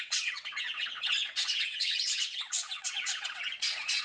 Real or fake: fake